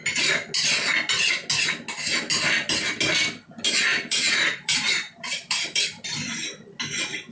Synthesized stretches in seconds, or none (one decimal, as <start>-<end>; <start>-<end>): 3.9-5.8